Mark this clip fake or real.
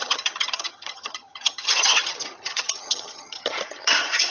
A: fake